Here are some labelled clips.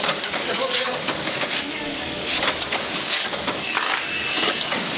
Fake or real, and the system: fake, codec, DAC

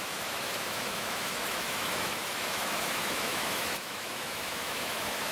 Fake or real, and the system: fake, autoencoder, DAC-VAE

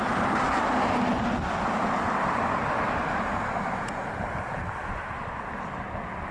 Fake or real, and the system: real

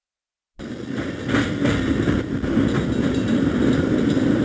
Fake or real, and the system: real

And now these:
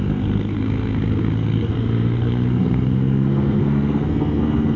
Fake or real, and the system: fake, codec, SNAC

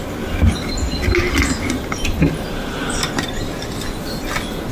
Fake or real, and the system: real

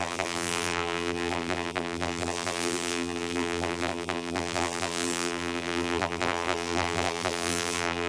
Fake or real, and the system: fake, vocoder, BigVGAN v2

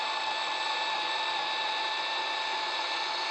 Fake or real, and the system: fake, vocoder, BigVGAN v2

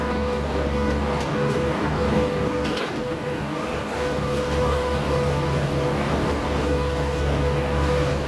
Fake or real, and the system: fake, codec, DAC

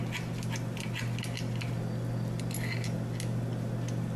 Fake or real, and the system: real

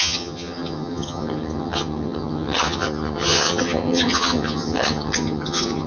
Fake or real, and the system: fake, vocoder, HiFi-GAN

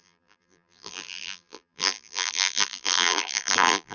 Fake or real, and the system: fake, vocoder, BigVGAN v2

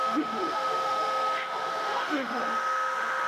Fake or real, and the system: fake, autoencoder, DAC-VAE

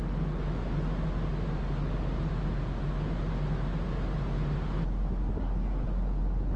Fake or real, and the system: real